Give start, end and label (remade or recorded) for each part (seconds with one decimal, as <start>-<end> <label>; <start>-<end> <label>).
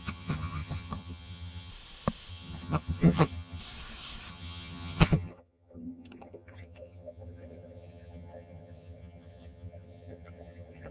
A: 0.0-1.7 remade; 1.7-2.3 recorded; 2.3-3.6 remade; 3.6-4.3 recorded; 4.3-10.9 remade